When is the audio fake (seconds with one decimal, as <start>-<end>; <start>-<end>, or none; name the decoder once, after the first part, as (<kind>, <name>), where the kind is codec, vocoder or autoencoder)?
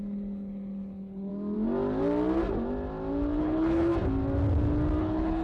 0.0-1.3 (codec, HILCodec); 3.4-3.9; 5.0-5.4